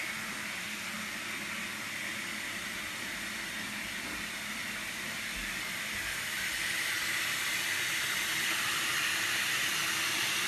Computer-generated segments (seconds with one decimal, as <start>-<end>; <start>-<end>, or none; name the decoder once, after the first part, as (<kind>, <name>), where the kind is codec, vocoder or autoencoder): none

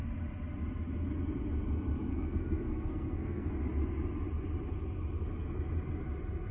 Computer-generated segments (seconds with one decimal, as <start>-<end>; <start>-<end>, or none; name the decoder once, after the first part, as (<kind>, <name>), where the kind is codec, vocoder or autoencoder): 2.1-3.5 (codec, SNAC)

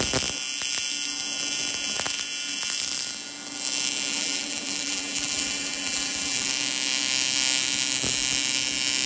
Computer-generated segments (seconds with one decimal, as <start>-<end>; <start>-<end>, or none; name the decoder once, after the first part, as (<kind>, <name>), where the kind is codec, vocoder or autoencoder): 4.1-6.5 (vocoder, BigVGAN v2)

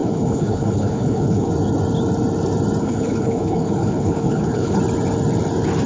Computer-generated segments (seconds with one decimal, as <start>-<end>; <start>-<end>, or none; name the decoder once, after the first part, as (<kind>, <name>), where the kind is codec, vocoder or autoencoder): 0.0-1.5 (codec, HILCodec); 2.8-4.8